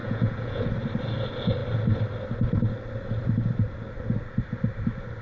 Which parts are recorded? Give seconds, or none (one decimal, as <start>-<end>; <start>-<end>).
0.6-5.2